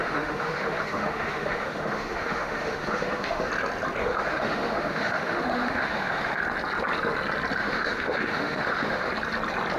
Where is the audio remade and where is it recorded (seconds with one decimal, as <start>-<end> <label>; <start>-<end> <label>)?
0.0-3.5 remade; 3.5-4.0 recorded; 4.0-6.4 remade; 6.4-7.6 recorded; 7.6-9.1 remade; 9.1-9.8 recorded